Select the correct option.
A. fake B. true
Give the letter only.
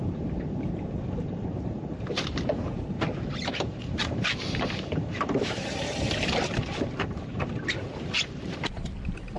A